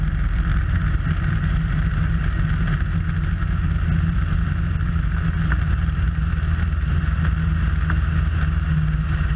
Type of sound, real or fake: real